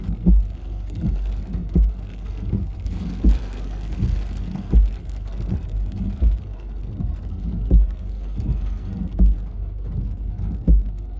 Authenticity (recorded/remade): remade